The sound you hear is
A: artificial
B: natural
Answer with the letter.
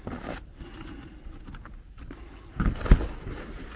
B